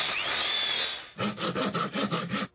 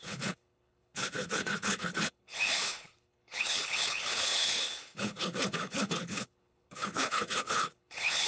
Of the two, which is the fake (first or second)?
second